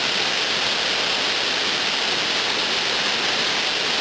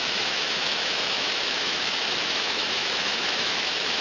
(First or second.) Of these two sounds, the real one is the first